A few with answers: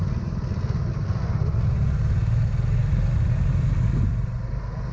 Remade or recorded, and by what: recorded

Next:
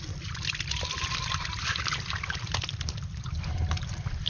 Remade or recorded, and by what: recorded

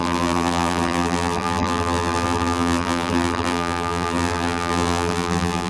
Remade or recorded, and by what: remade, vocoder, BigVGAN v2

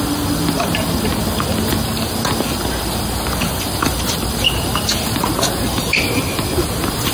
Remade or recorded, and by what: recorded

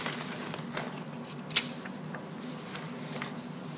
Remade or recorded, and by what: recorded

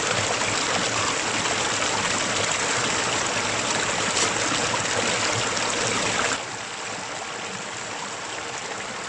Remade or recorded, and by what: recorded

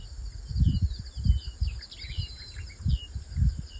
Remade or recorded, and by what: recorded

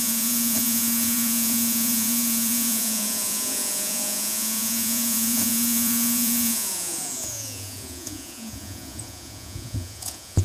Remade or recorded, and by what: remade, vocoder, Vocos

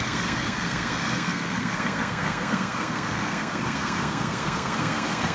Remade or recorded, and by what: remade, codec, SNAC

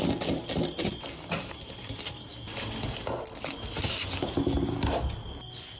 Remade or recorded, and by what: recorded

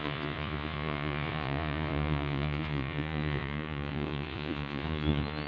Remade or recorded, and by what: remade, vocoder, Vocos